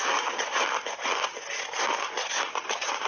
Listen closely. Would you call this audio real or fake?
real